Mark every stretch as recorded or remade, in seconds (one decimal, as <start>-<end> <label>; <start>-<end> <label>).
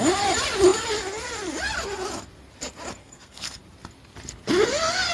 0.0-3.0 recorded; 3.0-3.6 remade; 3.6-5.1 recorded